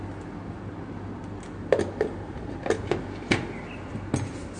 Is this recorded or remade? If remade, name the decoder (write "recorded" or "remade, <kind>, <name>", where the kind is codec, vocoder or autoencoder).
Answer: recorded